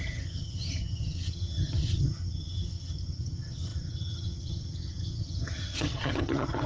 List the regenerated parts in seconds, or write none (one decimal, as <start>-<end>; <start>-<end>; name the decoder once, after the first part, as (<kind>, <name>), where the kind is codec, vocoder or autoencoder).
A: 0.0-6.7 (vocoder, HiFi-GAN)